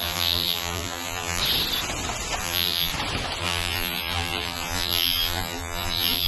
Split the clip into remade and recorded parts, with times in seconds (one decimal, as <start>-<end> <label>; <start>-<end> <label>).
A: 0.0-1.4 remade; 1.4-2.4 recorded; 2.4-2.9 remade; 2.9-3.4 recorded; 3.4-6.3 remade